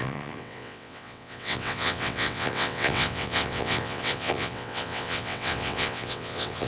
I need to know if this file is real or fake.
fake